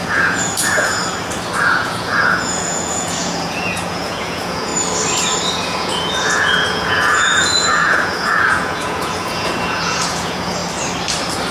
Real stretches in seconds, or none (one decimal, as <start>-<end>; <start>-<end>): 1.0-1.6; 4.7-5.5; 10.6-11.5